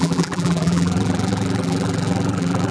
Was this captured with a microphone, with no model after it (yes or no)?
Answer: no